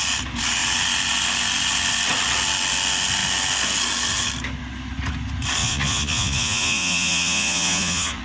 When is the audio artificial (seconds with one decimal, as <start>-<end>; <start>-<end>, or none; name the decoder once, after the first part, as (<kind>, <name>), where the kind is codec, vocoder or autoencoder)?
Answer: 5.6-8.2 (vocoder, Vocos)